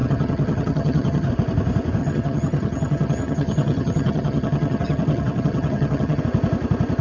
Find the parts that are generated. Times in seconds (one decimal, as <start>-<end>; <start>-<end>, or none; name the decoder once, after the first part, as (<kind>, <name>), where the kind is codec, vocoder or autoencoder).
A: 0.0-1.3 (vocoder, HiFi-GAN); 2.0-6.2